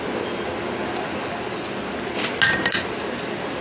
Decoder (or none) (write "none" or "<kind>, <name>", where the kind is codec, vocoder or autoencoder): none